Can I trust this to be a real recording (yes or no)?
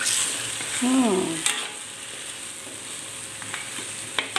yes